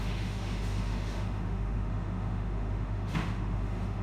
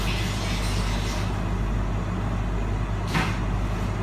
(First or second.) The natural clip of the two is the second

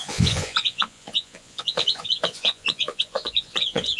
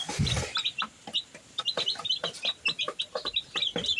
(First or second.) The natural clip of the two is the second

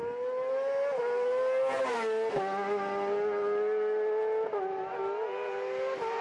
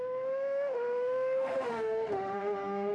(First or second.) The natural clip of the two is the first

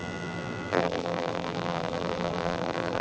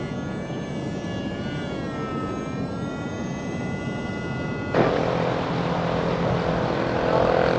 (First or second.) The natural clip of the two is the second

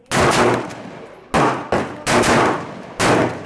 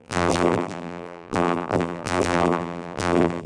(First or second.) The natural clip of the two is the first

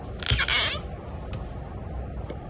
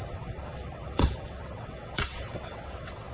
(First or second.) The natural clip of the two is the first